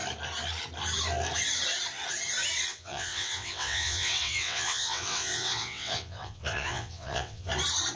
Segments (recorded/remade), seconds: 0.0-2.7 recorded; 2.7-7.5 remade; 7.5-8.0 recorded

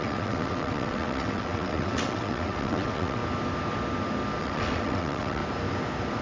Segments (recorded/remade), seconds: 0.0-3.2 remade; 3.2-4.4 recorded; 4.4-5.4 remade; 5.4-6.2 recorded

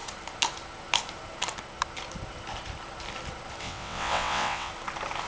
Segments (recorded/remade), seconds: 0.0-3.6 recorded; 3.6-4.7 remade; 4.7-5.3 recorded

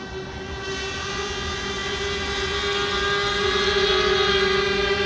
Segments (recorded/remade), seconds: 0.0-5.1 recorded

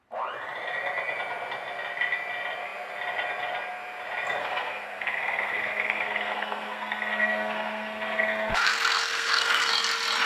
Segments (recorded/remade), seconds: 0.0-4.4 recorded; 4.4-9.7 remade; 9.7-10.3 recorded

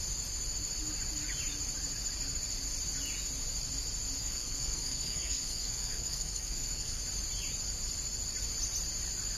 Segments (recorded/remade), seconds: 0.0-4.2 recorded; 4.2-7.0 remade; 7.0-9.4 recorded